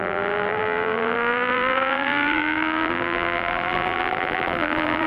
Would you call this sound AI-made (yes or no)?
yes